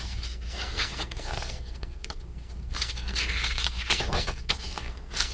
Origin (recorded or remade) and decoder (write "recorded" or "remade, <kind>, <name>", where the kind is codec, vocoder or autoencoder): remade, codec, SNAC